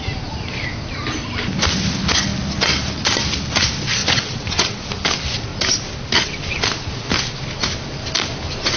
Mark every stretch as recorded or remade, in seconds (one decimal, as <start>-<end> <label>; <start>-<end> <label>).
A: 0.0-4.0 recorded; 4.0-4.9 remade; 4.9-8.8 recorded